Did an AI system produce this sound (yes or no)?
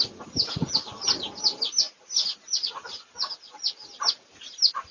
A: no